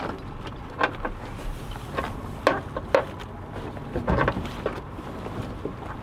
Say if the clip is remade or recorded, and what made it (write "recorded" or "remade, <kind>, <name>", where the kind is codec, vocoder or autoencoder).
recorded